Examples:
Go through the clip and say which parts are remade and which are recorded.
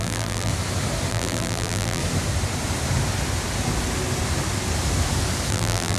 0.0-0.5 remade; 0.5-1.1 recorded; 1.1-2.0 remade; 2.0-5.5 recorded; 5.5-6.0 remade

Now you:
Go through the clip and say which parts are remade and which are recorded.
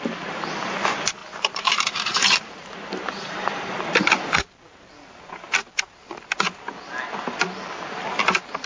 0.0-1.2 recorded; 1.2-4.8 remade; 4.8-8.7 recorded